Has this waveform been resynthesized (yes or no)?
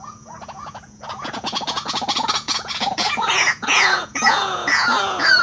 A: yes